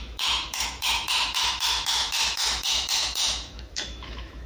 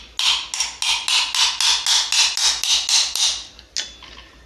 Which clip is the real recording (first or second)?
second